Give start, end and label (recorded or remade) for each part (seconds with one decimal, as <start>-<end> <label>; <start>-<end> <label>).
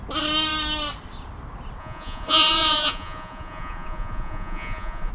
0.0-1.8 recorded; 1.8-5.1 remade